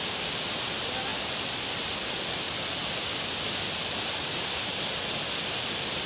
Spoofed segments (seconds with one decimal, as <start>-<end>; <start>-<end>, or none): none

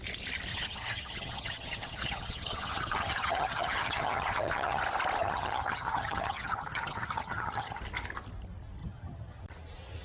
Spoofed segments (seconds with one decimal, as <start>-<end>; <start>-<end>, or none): 0.5-4.8; 5.2-7.8; 8.8-9.4

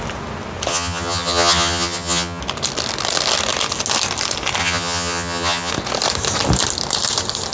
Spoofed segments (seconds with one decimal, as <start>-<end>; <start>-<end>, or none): 0.7-2.4; 4.6-5.7

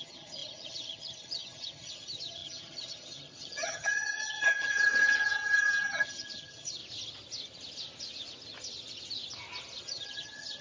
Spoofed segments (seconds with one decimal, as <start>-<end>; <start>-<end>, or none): 0.0-6.8; 9.8-10.6

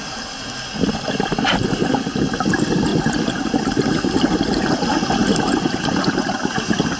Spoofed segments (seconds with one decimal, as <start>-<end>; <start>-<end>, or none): none

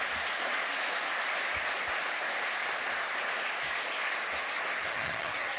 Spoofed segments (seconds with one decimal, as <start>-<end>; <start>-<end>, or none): 4.8-5.6

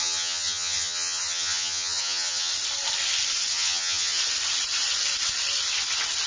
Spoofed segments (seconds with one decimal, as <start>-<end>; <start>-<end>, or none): 0.0-2.5; 3.5-4.2

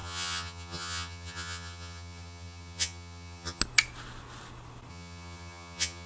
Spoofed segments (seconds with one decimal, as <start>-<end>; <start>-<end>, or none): 0.0-3.6; 4.9-6.1